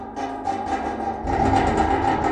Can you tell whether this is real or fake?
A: real